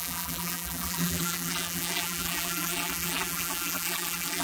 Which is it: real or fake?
fake